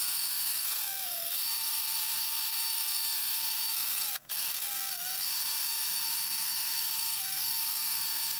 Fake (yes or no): yes